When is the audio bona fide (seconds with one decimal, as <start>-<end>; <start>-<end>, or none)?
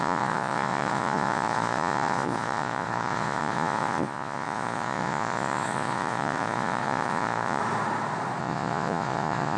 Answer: 7.6-8.4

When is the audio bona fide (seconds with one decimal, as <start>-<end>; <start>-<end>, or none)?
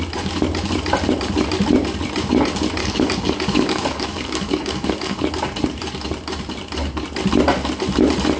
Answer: 0.0-2.8; 5.3-8.4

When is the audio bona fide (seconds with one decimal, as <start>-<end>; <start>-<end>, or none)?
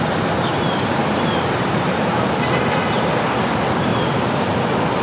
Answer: 0.0-1.0; 2.2-3.9; 4.6-5.0